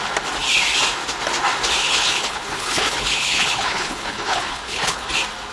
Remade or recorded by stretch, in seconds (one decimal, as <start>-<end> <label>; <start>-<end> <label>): 0.0-1.8 recorded; 1.8-5.1 remade; 5.1-5.5 recorded